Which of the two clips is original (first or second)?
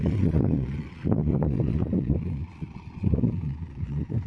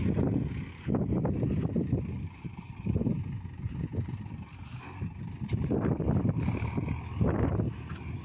second